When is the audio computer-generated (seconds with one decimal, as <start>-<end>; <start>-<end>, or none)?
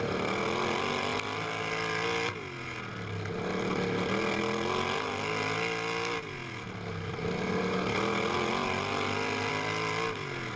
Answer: none